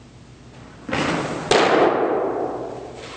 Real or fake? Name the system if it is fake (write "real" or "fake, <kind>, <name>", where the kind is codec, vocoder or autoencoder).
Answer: real